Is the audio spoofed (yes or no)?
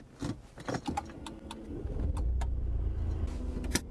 no